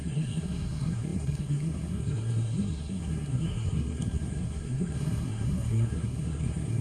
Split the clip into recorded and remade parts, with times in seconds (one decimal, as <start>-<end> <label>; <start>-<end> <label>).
0.0-6.8 remade